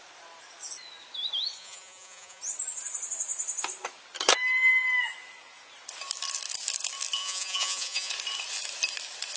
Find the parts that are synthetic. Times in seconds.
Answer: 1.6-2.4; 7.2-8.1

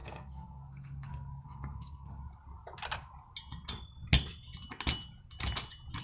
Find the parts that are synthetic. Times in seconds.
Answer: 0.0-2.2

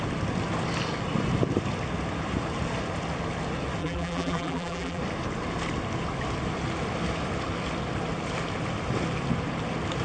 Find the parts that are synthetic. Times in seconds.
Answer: 3.8-5.0

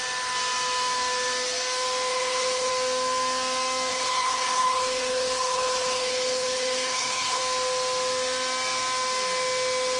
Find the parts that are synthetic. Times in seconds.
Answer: 2.1-2.7; 3.9-7.4

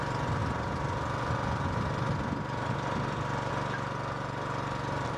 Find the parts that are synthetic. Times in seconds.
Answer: none

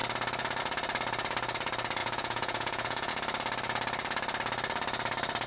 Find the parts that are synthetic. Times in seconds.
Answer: 2.0-3.1

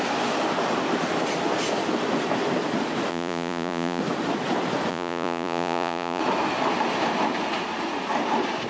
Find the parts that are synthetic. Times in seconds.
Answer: 3.1-4.0; 4.9-6.2